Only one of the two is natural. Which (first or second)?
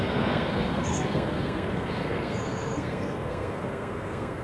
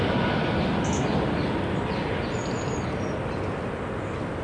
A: second